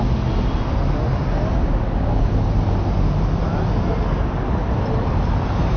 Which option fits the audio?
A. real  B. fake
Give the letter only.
A